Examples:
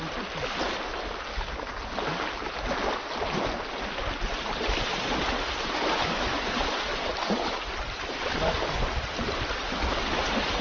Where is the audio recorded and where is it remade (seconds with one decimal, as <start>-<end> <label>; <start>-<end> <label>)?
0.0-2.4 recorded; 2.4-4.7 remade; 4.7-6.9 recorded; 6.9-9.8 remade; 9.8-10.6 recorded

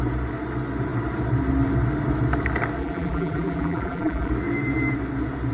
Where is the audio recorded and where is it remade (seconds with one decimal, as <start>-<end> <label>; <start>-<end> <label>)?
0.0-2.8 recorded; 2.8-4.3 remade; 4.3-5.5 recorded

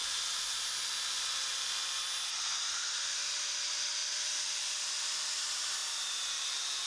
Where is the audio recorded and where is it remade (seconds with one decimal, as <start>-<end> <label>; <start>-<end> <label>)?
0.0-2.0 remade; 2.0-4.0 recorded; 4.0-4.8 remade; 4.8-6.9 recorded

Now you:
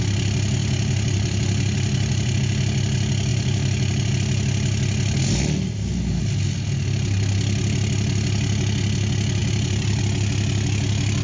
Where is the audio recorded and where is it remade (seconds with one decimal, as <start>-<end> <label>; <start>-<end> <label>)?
0.0-0.6 recorded; 0.6-2.4 remade; 2.4-3.3 recorded; 3.3-4.1 remade; 4.1-9.4 recorded; 9.4-10.0 remade; 10.0-11.2 recorded

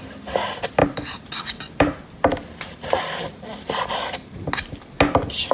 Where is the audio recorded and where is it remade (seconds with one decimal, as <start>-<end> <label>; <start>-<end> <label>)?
0.0-0.8 recorded; 0.8-4.1 remade; 4.1-5.5 recorded